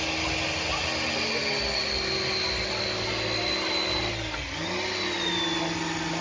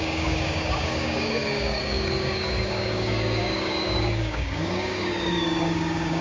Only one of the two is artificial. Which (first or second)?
second